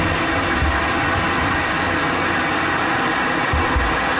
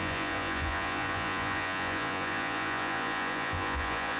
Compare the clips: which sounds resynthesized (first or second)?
second